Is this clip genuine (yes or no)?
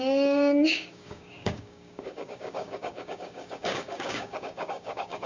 no